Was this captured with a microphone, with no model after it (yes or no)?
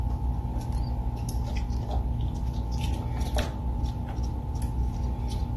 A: yes